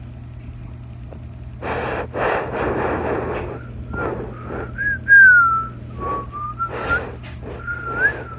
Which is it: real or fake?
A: real